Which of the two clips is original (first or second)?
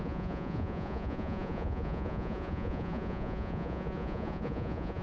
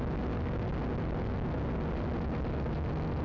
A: second